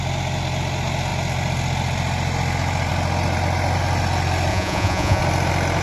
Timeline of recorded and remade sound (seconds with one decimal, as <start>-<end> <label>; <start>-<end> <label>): 0.0-4.5 recorded; 4.5-5.2 remade; 5.2-5.8 recorded